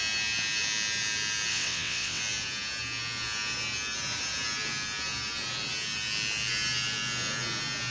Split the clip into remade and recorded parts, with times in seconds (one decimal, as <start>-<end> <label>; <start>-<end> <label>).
0.0-1.5 recorded; 1.5-2.2 remade; 2.2-7.9 recorded